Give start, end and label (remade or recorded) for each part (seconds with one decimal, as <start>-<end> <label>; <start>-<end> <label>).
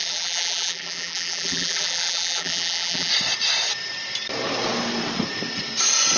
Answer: 0.0-3.1 remade; 3.1-6.2 recorded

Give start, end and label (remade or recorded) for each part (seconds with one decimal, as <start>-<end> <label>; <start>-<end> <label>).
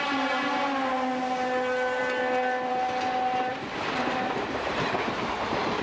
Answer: 0.0-3.5 recorded; 3.5-4.9 remade; 4.9-5.8 recorded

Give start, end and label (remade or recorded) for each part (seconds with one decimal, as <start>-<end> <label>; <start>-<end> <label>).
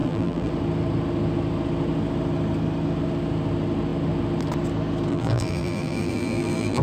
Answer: 0.0-0.5 remade; 0.5-5.1 recorded; 5.1-6.8 remade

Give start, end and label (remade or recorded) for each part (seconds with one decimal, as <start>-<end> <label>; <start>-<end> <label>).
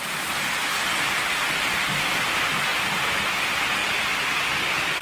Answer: 0.0-5.0 recorded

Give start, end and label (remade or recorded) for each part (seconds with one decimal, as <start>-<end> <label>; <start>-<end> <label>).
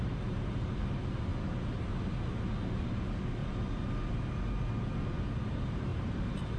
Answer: 0.0-1.3 remade; 1.3-2.8 recorded; 2.8-3.4 remade; 3.4-5.5 recorded; 5.5-6.6 remade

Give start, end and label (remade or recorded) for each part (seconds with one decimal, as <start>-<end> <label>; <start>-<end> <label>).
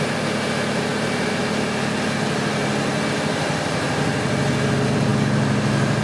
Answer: 0.0-0.9 recorded; 0.9-1.4 remade; 1.4-6.0 recorded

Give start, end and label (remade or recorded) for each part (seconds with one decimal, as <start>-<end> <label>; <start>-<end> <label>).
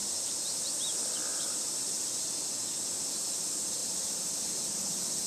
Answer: 0.0-0.7 remade; 0.7-1.3 recorded; 1.3-2.3 remade; 2.3-3.8 recorded; 3.8-4.6 remade; 4.6-5.3 recorded